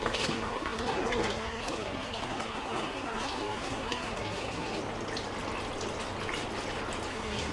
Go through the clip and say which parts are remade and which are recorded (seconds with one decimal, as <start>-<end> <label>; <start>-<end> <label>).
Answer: 0.0-4.8 remade; 4.8-7.1 recorded; 7.1-7.5 remade